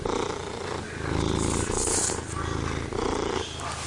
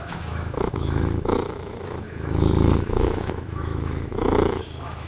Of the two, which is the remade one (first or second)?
second